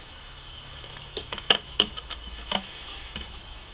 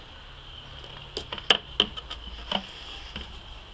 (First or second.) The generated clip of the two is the first